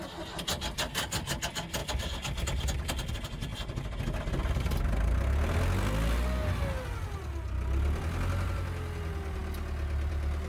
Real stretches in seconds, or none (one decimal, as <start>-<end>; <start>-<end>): 0.0-10.5